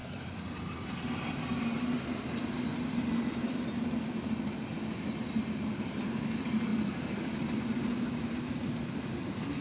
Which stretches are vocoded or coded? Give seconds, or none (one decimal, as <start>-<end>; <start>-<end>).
none